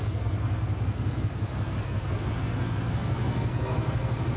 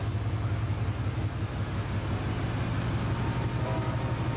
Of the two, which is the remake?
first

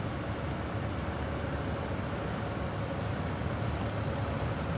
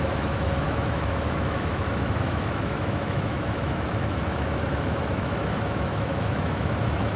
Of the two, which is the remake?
second